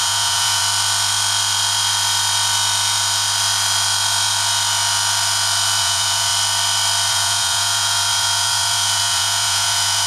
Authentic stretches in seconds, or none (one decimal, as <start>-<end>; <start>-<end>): 0.6-5.8; 6.3-7.1